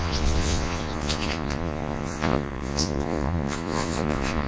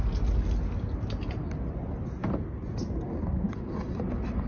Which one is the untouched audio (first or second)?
second